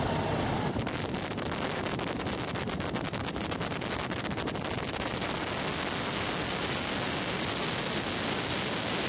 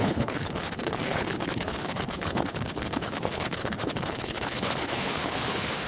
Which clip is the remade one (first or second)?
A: second